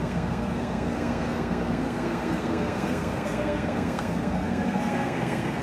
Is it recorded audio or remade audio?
remade